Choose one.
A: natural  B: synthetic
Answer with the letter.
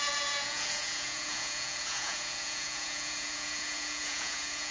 B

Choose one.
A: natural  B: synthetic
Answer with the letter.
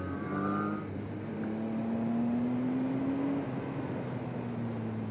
A